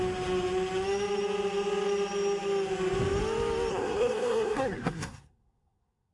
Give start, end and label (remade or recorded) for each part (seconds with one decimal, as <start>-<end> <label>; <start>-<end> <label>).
0.0-3.7 recorded; 3.7-6.1 remade